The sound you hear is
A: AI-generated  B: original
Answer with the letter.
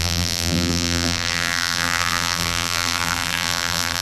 A